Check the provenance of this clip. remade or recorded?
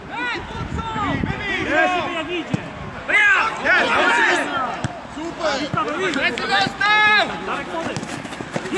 recorded